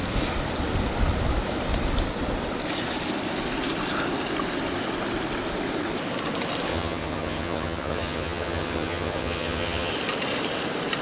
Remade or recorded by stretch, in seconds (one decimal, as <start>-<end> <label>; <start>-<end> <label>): 0.0-6.7 recorded; 6.7-9.9 remade; 9.9-11.0 recorded